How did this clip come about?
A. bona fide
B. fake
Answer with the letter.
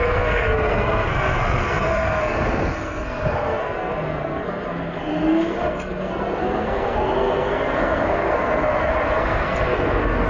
B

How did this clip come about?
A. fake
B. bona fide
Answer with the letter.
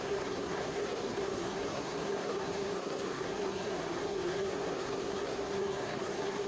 A